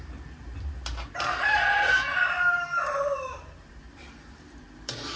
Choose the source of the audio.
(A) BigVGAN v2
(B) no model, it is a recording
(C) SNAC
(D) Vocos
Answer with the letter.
A